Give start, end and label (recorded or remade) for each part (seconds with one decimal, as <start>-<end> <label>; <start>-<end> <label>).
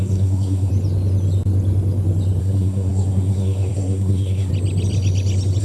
0.0-0.7 remade; 0.7-2.4 recorded; 2.4-4.5 remade; 4.5-5.6 recorded